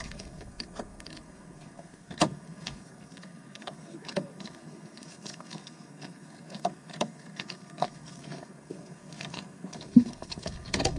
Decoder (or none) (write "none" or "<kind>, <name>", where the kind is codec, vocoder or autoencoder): codec, SNAC